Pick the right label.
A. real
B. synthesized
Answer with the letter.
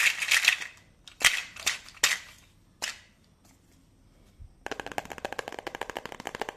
A